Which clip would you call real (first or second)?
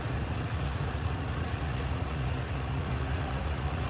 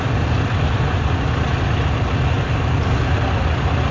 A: second